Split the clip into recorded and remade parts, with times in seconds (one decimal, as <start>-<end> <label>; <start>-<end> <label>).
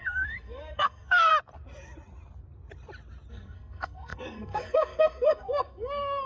0.0-1.3 remade; 1.3-3.3 recorded; 3.3-6.3 remade